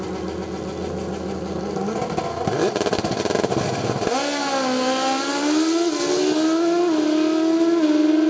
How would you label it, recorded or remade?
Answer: recorded